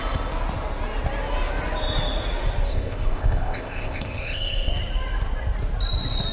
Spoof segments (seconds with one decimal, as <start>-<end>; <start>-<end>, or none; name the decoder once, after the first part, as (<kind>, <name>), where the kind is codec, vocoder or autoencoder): 2.7-4.7 (codec, ZipCodec)